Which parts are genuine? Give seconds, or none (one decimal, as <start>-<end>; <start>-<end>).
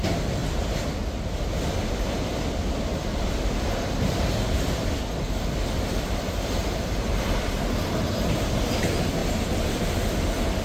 0.0-6.6; 8.6-10.6